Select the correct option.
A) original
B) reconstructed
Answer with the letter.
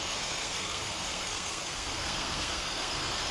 B